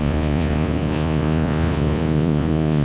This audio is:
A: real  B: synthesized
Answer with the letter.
B